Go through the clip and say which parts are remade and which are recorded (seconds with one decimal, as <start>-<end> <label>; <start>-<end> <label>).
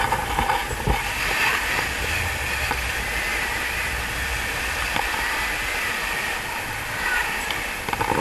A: 0.0-8.2 recorded